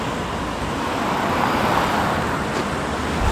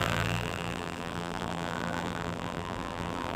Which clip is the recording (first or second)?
first